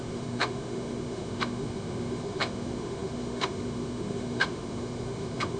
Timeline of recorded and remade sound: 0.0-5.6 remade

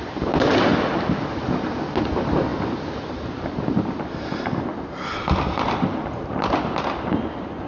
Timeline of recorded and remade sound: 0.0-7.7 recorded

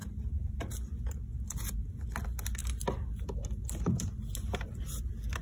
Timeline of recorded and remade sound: 0.0-0.7 remade; 0.7-5.4 recorded